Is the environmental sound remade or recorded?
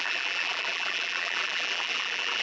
remade